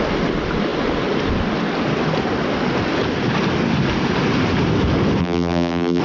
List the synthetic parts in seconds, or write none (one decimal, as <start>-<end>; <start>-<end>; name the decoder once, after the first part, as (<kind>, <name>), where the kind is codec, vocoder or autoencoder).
5.2-6.0 (vocoder, BigVGAN v2)